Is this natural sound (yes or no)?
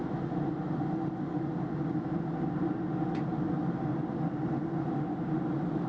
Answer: yes